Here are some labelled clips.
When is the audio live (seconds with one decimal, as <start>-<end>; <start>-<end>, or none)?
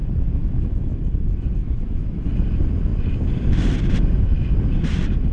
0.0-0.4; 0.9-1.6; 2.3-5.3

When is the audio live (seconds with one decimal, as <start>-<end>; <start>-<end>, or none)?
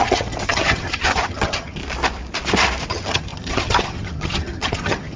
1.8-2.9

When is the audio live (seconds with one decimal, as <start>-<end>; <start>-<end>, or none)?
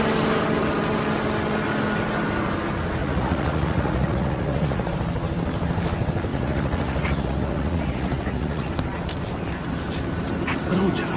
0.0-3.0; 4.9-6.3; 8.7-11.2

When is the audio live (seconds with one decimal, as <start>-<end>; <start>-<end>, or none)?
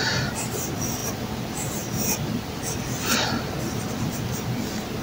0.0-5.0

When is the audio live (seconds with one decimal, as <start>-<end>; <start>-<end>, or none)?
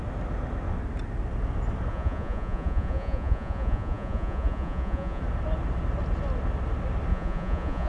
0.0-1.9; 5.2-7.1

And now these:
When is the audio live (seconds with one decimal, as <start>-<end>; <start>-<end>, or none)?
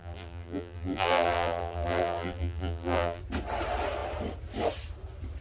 3.2-5.4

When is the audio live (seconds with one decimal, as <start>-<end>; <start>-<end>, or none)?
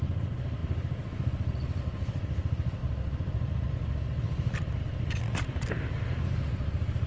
0.0-7.1